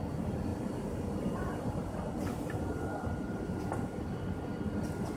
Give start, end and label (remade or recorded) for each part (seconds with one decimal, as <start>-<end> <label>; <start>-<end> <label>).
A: 0.0-0.5 recorded; 0.5-3.6 remade; 3.6-5.2 recorded